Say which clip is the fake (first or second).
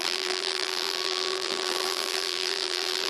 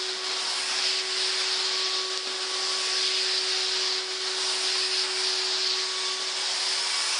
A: first